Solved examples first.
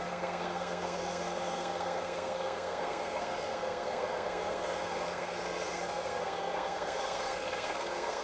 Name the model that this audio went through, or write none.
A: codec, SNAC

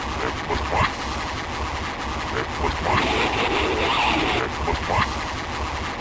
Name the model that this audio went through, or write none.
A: none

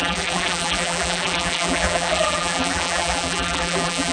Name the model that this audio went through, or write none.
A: vocoder, BigVGAN v2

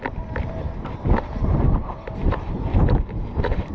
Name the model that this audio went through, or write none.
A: vocoder, BigVGAN v2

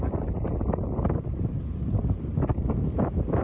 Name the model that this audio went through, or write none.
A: none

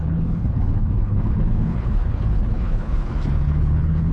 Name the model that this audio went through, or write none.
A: codec, HILCodec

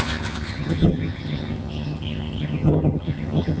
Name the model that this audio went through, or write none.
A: vocoder, HiFi-GAN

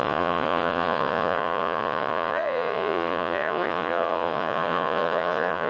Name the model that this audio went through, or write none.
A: vocoder, Vocos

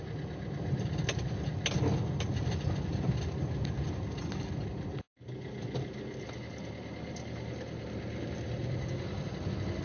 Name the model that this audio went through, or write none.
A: none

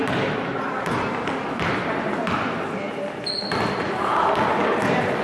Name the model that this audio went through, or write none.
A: none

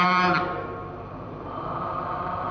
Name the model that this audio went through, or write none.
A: none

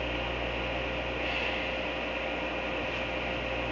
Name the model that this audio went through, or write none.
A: none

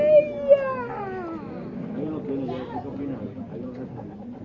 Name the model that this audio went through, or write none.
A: none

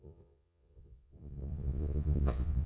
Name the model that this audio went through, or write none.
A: vocoder, Vocos